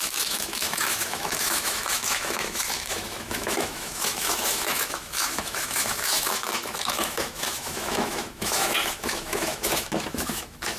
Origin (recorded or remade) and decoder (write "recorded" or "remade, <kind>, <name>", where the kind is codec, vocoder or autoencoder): remade, autoencoder, DAC-VAE